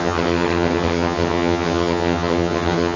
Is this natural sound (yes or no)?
no